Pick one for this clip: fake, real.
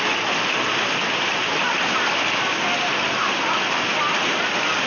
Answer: real